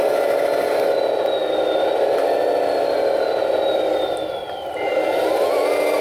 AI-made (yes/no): no